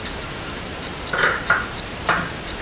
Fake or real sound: fake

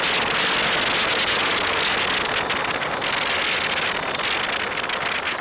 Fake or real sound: real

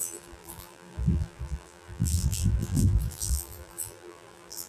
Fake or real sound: fake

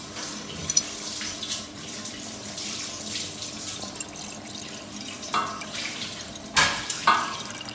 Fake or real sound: fake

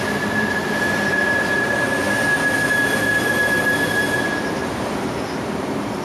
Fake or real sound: real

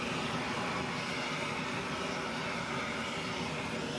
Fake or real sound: real